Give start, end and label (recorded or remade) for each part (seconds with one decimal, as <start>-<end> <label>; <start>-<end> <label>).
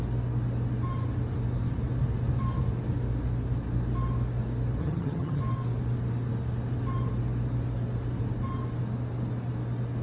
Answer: 0.0-4.8 recorded; 4.8-5.4 remade; 5.4-10.0 recorded